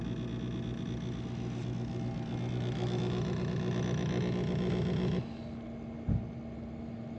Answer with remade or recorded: recorded